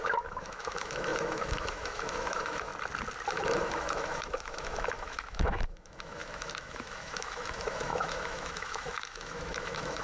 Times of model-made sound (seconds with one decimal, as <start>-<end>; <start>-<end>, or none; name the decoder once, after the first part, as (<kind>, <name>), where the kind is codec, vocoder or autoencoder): 0.0-2.7 (autoencoder, DAC-VAE); 3.3-10.0